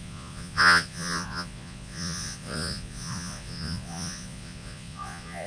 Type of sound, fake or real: fake